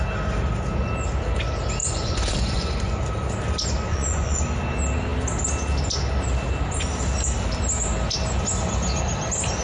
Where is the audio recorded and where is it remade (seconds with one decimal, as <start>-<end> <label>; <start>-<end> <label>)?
0.0-1.8 recorded; 1.8-3.0 remade; 3.0-3.9 recorded; 3.9-4.4 remade; 4.4-9.6 recorded

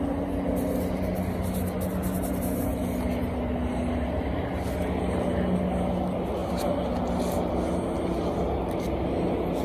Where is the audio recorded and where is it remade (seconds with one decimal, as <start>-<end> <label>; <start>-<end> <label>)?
0.0-9.6 recorded

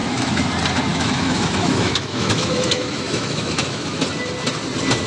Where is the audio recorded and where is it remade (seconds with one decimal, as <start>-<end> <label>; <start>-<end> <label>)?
0.0-0.5 remade; 0.5-0.9 recorded; 0.9-4.0 remade; 4.0-5.1 recorded

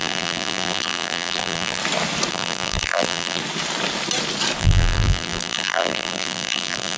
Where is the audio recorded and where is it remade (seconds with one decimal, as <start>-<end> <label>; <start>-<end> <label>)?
0.0-1.8 remade; 1.8-2.3 recorded; 2.3-3.4 remade; 3.4-4.6 recorded; 4.6-7.0 remade

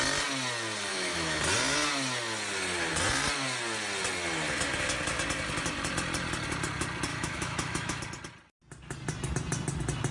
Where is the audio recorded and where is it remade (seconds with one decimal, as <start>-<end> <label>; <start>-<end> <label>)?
0.0-0.9 recorded; 0.9-1.4 remade; 1.4-7.1 recorded; 7.1-8.0 remade; 8.0-10.1 recorded

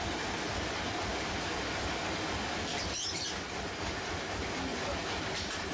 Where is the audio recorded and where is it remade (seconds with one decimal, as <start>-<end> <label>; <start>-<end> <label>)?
0.0-5.7 recorded